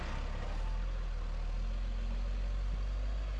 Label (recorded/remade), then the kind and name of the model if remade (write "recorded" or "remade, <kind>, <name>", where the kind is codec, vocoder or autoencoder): recorded